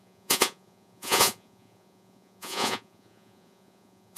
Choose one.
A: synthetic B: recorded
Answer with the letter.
A